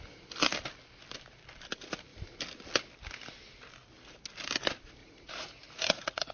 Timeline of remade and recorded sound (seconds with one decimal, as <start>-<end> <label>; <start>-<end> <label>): 0.0-5.0 recorded; 5.0-6.3 remade